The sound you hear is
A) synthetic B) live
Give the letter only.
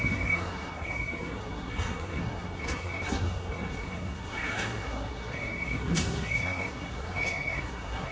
A